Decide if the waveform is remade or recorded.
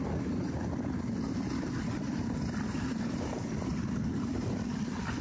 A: recorded